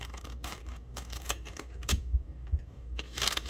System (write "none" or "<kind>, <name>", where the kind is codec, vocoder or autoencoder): codec, DAC